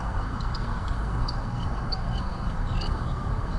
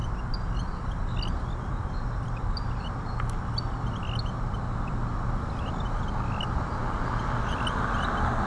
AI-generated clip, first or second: first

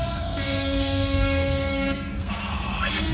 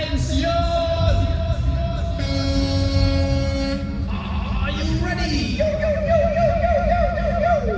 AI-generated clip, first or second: first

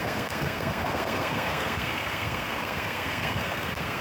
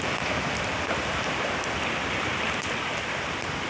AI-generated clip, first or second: first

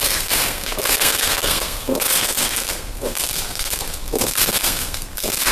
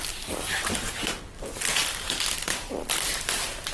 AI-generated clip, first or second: first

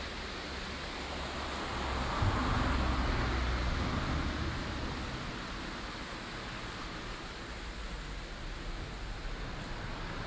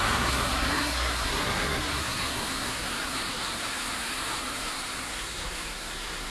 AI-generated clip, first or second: second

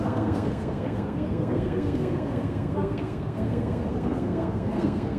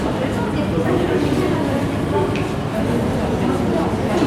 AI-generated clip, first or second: first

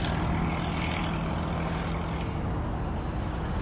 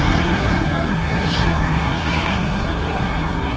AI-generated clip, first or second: second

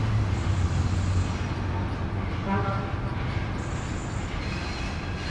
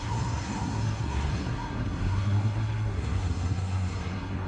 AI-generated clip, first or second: second